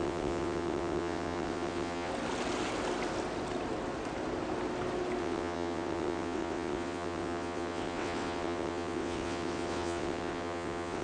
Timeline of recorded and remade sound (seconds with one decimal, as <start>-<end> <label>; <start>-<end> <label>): 0.0-2.1 remade; 2.1-5.2 recorded; 5.2-11.0 remade